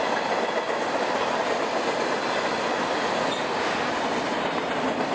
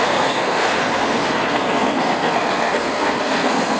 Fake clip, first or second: second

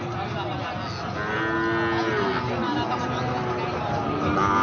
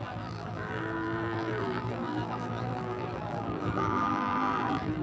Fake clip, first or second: second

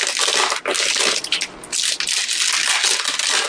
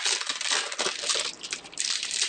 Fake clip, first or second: second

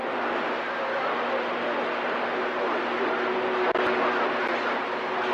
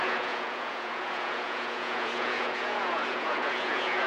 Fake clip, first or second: second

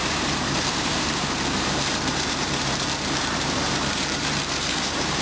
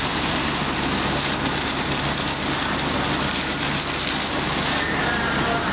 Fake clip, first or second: first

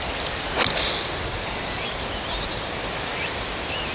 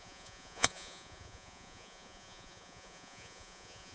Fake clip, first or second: second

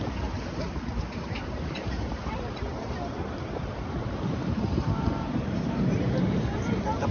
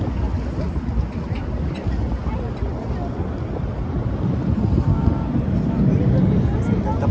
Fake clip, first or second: first